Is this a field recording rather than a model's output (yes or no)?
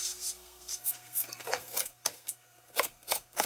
no